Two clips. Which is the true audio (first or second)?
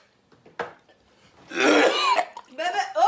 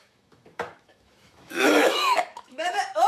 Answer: first